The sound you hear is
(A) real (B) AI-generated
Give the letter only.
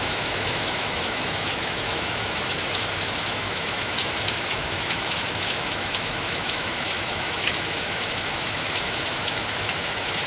B